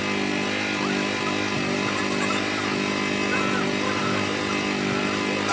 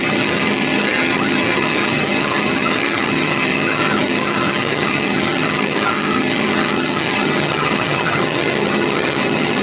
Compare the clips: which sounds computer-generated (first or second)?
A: second